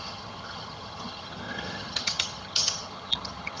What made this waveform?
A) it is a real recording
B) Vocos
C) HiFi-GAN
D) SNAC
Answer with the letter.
C